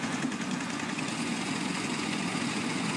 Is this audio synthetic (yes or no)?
yes